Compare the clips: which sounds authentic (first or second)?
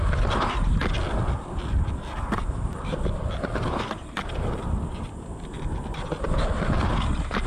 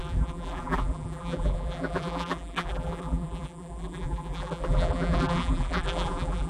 first